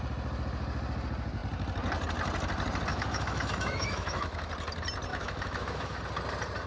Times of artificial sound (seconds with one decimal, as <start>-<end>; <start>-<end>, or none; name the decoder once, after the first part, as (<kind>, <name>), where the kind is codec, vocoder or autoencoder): 2.9-4.5 (autoencoder, DAC-VAE); 5.1-6.0